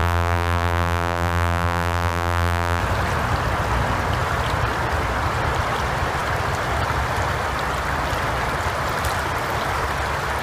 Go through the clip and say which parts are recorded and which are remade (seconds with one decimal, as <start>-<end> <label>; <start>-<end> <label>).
0.0-2.8 remade; 2.8-10.4 recorded